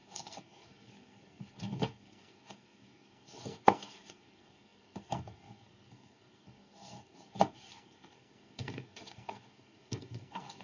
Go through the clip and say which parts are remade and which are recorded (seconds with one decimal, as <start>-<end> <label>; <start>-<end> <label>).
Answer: 0.0-10.6 remade